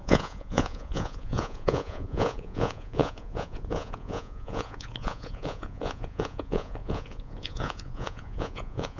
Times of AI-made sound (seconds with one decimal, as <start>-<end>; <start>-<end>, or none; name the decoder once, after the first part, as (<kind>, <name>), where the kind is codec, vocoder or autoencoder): 0.0-9.0 (vocoder, Vocos)